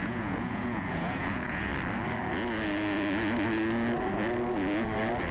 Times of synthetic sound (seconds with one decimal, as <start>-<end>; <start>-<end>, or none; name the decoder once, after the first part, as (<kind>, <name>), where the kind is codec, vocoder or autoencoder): 0.0-1.7 (vocoder, Vocos)

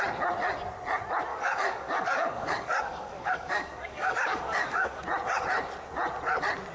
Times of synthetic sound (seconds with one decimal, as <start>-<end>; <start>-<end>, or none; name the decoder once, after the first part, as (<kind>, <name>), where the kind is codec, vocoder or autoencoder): 1.3-5.0 (codec, DAC)

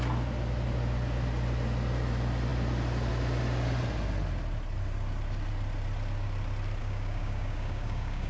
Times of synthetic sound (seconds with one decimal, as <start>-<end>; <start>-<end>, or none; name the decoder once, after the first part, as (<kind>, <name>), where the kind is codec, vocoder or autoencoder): 6.8-8.3 (codec, DAC)

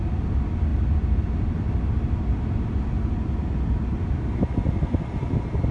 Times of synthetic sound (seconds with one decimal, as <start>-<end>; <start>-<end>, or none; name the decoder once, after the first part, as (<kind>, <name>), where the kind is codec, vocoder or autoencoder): none

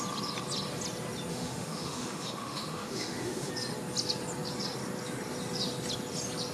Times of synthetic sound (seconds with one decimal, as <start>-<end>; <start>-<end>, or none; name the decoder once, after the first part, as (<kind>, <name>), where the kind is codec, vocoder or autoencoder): 1.3-3.5 (autoencoder, DAC-VAE)